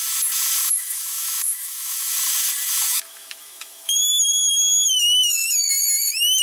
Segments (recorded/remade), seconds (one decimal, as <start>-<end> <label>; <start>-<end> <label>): 0.0-0.6 recorded; 0.6-2.1 remade; 2.1-2.9 recorded; 2.9-5.7 remade; 5.7-6.4 recorded